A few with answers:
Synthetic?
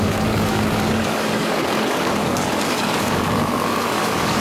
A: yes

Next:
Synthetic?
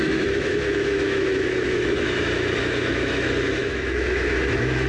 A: yes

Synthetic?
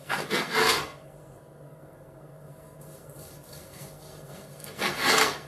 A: yes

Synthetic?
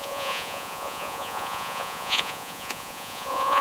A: yes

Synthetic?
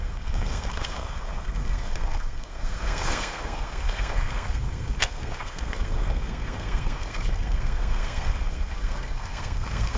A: yes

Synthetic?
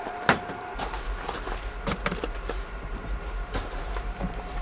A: yes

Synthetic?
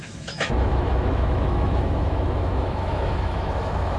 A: yes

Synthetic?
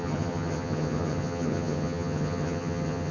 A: yes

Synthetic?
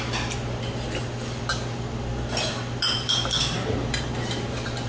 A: no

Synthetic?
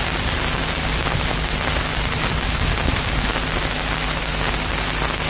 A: no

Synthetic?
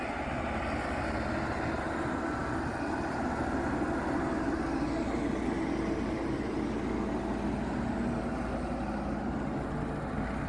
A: no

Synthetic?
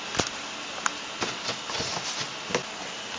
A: no